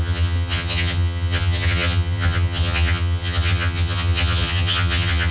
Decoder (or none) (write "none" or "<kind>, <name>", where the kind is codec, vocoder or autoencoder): vocoder, HiFi-GAN